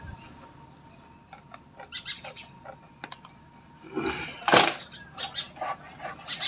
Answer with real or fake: real